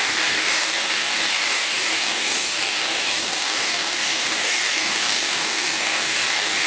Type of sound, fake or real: fake